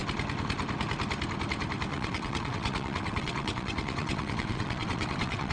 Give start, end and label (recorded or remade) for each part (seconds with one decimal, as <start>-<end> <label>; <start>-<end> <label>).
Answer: 0.0-1.9 recorded; 1.9-5.5 remade